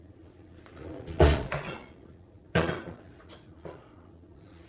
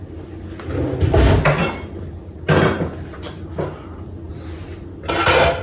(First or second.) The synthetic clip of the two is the first